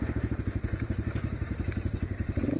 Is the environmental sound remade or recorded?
remade